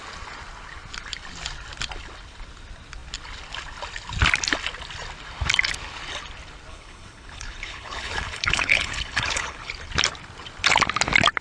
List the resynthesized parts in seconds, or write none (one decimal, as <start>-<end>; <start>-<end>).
6.7-9.7